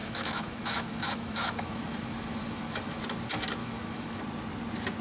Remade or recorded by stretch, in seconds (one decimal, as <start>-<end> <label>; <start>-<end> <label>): 0.0-3.0 remade; 3.0-3.6 recorded; 3.6-4.2 remade; 4.2-5.0 recorded